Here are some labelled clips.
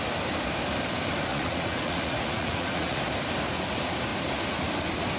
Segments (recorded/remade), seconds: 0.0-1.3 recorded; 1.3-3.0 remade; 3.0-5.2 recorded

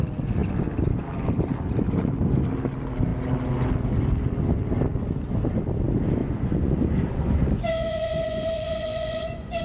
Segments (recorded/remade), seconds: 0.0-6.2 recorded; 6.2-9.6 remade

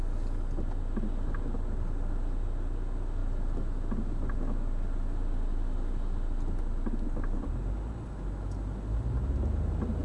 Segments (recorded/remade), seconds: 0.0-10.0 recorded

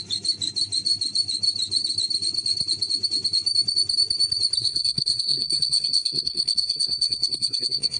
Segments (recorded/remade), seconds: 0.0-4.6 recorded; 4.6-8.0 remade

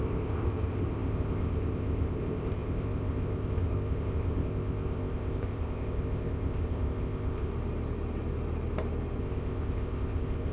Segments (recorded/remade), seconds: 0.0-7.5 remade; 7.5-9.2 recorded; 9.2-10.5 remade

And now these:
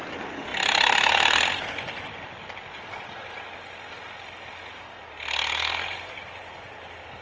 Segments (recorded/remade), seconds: 0.0-7.2 recorded

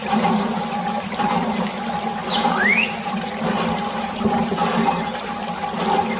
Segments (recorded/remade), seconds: 0.0-6.2 recorded

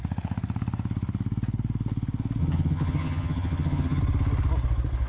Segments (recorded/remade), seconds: 0.0-2.4 recorded; 2.4-4.0 remade; 4.0-5.1 recorded